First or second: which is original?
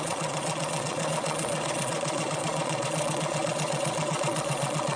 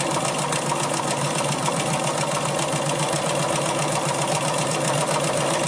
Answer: second